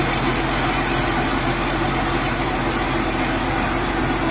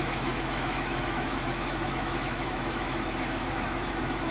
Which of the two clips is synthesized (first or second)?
second